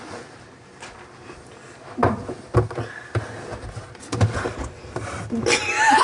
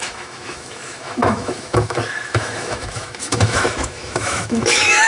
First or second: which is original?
first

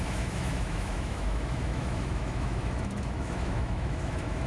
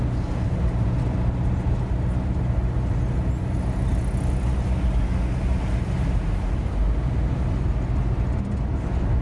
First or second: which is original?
second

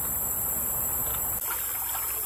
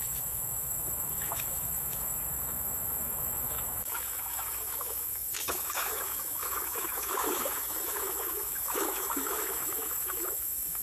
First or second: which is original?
first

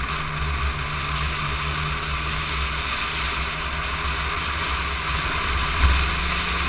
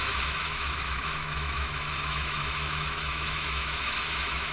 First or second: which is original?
first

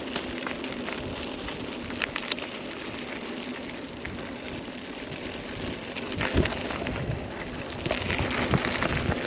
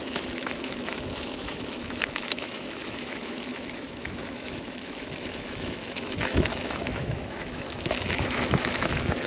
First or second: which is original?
first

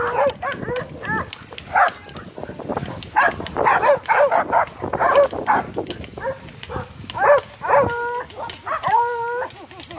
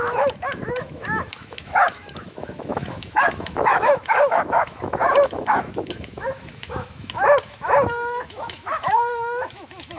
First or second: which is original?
first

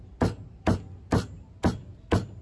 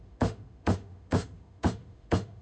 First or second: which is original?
first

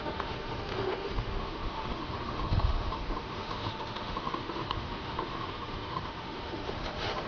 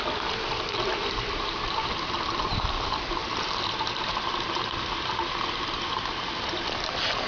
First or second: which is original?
second